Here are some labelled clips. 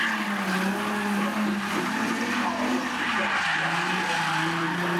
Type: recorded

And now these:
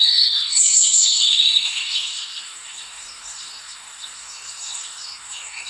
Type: remade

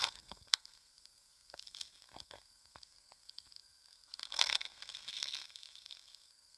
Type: remade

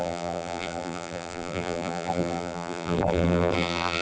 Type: remade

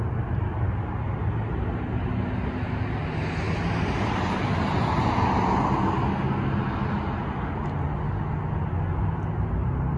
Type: recorded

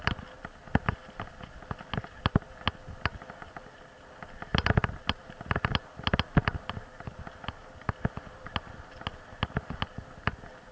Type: recorded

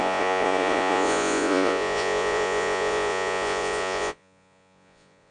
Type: remade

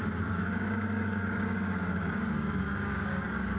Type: remade